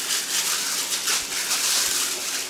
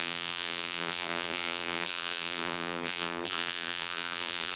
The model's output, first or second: second